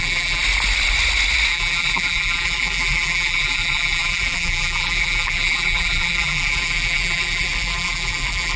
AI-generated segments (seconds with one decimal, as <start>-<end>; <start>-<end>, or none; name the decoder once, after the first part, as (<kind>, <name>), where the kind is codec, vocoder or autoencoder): 0.0-0.4 (vocoder, BigVGAN v2); 1.5-8.6